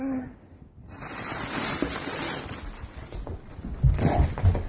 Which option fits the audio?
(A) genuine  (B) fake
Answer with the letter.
A